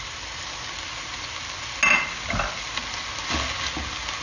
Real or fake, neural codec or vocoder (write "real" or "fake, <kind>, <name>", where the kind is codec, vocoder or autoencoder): real